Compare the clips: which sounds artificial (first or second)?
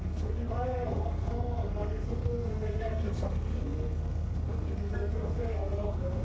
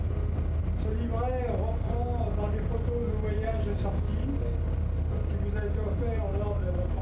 first